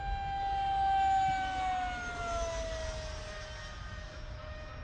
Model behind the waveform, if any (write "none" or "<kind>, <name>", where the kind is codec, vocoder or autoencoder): none